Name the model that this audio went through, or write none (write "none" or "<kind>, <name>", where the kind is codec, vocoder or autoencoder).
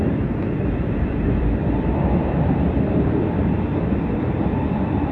vocoder, BigVGAN v2